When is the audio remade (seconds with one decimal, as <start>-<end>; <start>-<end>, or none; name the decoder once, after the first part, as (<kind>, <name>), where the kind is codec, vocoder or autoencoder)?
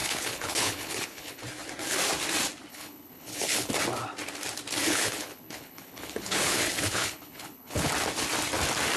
0.0-1.4 (codec, HILCodec); 2.7-3.7; 4.8-7.9